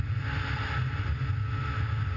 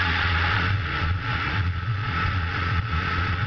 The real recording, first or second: first